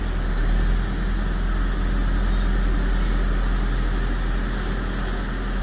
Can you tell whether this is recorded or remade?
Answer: recorded